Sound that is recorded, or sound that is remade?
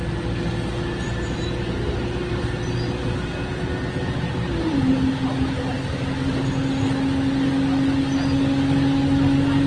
recorded